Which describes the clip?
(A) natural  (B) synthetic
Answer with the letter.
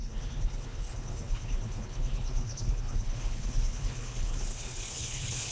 B